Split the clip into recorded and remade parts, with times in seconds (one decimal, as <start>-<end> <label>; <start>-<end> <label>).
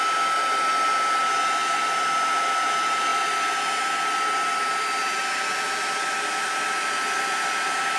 0.0-8.0 recorded